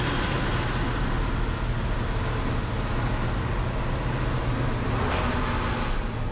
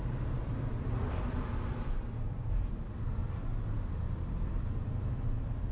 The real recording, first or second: first